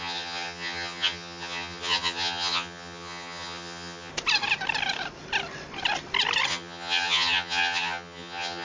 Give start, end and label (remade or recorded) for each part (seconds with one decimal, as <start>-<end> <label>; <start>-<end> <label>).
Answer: 0.0-4.1 remade; 4.1-6.5 recorded; 6.5-8.6 remade